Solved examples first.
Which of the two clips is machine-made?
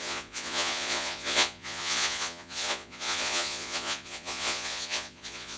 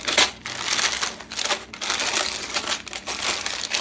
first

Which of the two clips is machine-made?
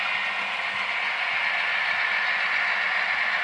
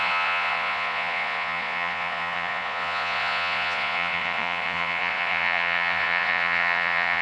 second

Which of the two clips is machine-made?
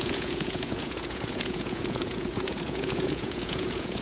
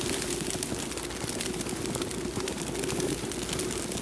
first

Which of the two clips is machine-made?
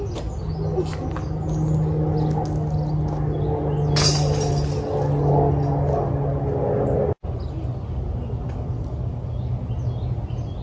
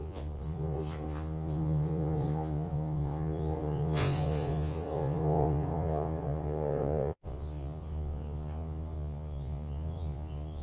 second